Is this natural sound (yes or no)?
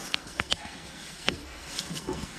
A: no